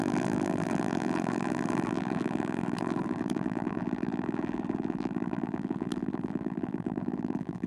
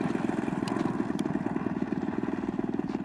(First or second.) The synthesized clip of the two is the first